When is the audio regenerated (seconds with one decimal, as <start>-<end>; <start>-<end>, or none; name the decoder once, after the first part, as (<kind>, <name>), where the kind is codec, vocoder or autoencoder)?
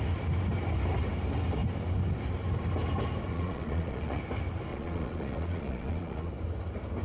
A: 3.3-4.2 (vocoder, Vocos); 4.7-6.3